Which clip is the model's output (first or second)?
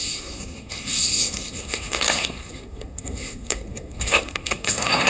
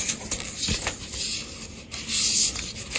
first